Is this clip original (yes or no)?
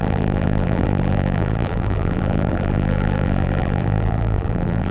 no